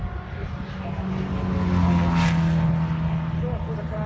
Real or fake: real